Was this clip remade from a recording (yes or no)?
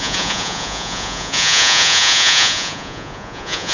yes